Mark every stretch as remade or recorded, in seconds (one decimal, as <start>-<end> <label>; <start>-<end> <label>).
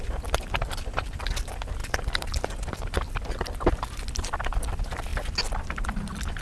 0.0-6.4 recorded